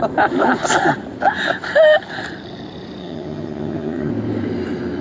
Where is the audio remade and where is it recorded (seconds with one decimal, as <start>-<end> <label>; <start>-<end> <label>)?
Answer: 0.0-3.0 recorded; 3.0-4.1 remade; 4.1-5.0 recorded